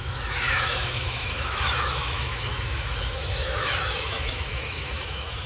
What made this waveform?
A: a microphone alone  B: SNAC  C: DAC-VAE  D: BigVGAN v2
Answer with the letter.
C